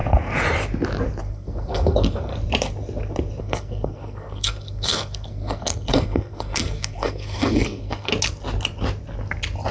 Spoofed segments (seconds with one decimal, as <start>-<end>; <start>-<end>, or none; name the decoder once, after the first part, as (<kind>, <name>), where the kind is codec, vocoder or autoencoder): 1.2-2.3 (codec, SNAC); 3.4-8.1